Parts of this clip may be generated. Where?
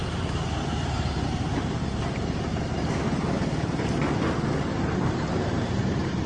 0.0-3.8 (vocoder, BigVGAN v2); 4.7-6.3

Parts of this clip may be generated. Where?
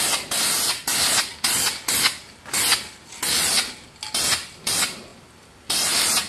0.0-0.8 (vocoder, BigVGAN v2); 4.6-5.1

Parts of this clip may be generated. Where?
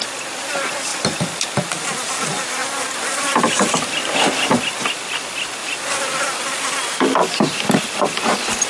none